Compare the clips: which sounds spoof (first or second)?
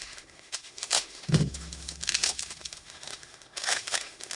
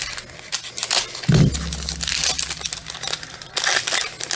first